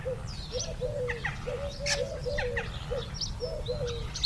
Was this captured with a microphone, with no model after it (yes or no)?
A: yes